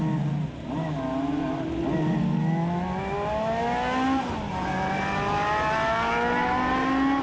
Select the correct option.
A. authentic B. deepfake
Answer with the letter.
A